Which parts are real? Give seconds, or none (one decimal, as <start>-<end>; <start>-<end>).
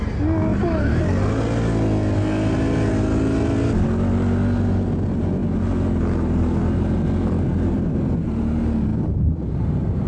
0.0-0.5; 1.3-8.9; 9.7-10.1